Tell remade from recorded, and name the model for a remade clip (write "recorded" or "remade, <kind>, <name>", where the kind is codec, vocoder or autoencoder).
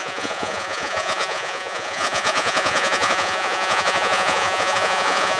remade, vocoder, Vocos